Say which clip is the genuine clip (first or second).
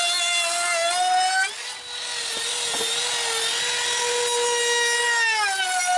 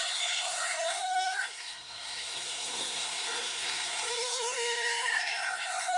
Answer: first